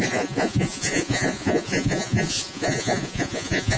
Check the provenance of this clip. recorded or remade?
remade